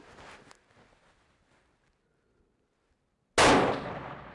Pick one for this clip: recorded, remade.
recorded